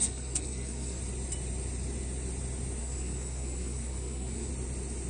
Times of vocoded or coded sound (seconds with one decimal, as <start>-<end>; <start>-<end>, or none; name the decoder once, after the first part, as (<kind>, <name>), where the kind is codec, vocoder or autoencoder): 0.0-1.0 (codec, SNAC); 2.8-4.5